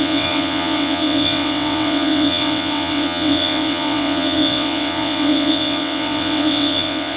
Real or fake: fake